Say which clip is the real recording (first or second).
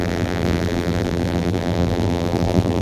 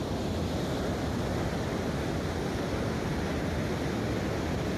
second